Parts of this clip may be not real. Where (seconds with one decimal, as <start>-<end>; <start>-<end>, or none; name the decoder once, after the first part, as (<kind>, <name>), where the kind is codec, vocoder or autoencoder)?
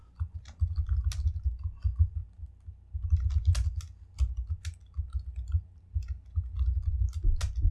none